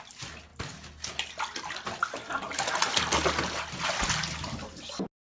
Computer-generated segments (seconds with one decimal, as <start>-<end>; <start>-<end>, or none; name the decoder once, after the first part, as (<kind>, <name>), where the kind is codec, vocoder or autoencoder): none